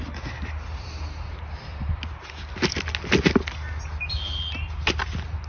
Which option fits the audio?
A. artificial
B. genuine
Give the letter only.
B